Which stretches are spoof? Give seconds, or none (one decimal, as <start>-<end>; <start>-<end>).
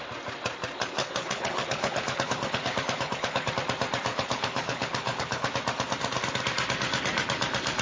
1.0-3.5; 4.1-5.5